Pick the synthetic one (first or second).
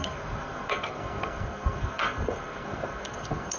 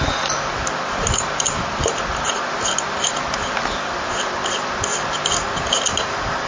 first